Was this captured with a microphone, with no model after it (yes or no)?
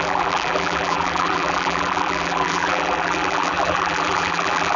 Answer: no